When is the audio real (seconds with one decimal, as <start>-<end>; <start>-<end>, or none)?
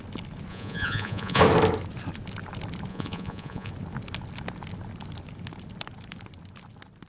0.0-0.5; 1.4-2.9; 3.7-7.1